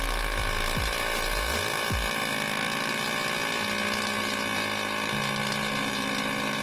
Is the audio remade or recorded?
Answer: recorded